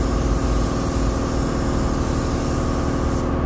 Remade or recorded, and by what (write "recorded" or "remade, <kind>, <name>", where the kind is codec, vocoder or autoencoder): recorded